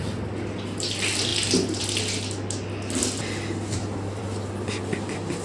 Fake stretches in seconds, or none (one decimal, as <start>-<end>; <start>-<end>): none